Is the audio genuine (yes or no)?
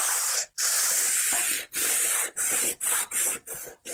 yes